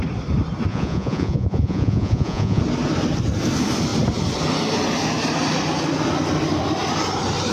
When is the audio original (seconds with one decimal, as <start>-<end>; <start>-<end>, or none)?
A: 0.0-0.7; 2.6-7.5